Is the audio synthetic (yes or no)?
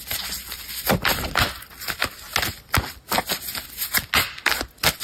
no